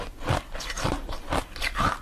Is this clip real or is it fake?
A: real